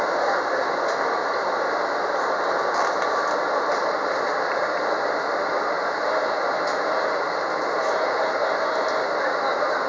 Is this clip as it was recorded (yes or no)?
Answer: yes